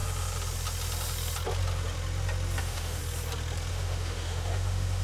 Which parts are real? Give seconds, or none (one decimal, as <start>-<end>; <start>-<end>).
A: 0.0-2.6; 3.0-3.7